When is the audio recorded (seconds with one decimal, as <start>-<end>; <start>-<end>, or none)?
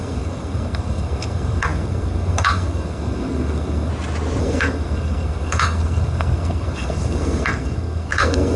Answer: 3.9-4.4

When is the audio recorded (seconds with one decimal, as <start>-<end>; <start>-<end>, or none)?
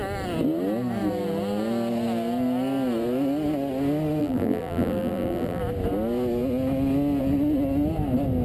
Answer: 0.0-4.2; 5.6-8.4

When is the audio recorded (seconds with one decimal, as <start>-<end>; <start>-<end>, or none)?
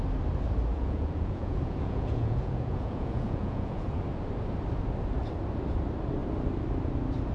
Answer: 0.0-0.7; 4.0-7.3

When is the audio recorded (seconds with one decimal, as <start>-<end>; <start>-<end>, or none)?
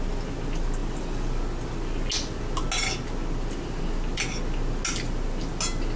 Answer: 0.0-6.0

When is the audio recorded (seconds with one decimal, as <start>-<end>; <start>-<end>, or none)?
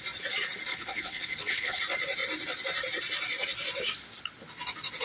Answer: 0.0-0.7; 1.8-5.0